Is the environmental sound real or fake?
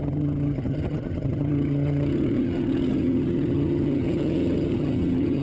fake